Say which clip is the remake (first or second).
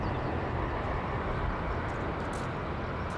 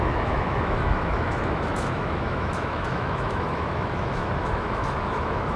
second